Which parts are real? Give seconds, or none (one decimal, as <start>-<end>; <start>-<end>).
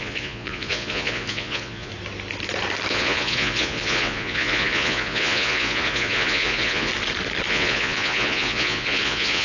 1.9-2.9; 6.9-7.5